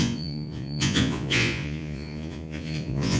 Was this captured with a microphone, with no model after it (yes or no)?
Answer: no